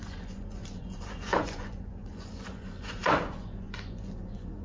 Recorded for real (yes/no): no